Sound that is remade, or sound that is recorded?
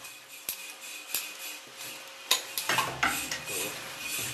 recorded